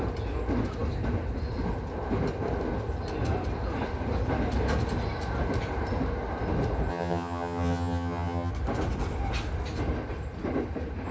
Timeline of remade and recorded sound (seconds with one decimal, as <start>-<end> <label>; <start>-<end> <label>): 0.0-6.9 recorded; 6.9-8.5 remade; 8.5-11.1 recorded